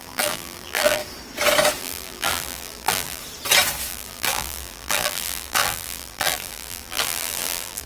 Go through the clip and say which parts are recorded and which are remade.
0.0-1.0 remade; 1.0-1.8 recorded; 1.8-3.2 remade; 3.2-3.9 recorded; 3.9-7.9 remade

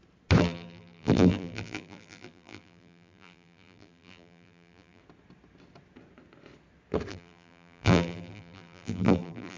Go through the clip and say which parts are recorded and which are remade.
0.0-0.4 recorded; 0.4-5.0 remade; 5.0-7.1 recorded; 7.1-9.6 remade